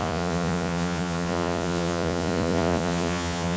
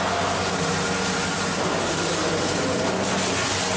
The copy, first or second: first